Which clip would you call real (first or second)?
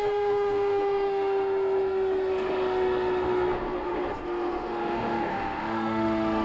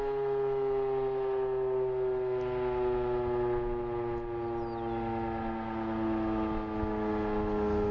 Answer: second